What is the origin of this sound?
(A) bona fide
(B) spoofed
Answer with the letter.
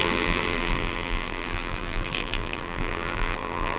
B